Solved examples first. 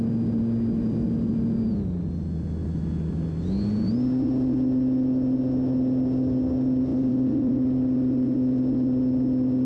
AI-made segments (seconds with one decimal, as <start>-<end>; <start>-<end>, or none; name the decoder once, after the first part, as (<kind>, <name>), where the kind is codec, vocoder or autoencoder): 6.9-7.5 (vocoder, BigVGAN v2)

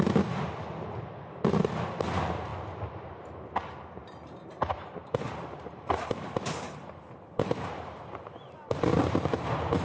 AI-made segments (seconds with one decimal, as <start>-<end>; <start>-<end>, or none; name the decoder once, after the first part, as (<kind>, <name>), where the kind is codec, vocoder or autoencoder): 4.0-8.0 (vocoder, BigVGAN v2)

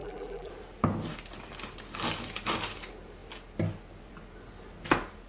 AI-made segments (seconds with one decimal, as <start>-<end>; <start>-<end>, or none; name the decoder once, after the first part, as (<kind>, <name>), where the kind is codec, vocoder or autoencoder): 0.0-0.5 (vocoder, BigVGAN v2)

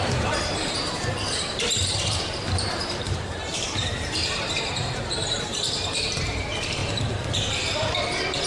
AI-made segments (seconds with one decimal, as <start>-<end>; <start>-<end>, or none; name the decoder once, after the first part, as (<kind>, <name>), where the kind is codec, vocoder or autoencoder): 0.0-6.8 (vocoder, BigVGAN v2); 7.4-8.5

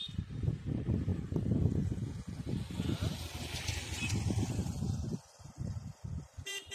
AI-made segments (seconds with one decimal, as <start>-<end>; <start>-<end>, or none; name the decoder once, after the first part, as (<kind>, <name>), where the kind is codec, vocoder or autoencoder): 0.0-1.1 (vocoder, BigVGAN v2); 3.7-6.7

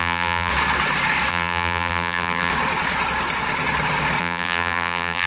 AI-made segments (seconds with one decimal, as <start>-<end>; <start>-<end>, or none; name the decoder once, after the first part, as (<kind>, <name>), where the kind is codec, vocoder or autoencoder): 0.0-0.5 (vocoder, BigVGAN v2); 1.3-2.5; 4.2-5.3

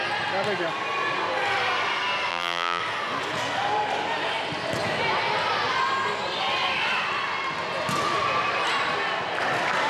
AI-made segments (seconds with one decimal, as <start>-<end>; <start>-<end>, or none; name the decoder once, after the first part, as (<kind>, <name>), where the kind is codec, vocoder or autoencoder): 2.3-2.8 (vocoder, BigVGAN v2)

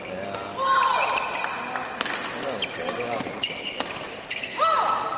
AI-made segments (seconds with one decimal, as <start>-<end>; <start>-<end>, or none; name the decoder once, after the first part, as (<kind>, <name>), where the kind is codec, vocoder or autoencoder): none